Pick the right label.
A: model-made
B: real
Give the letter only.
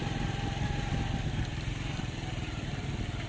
B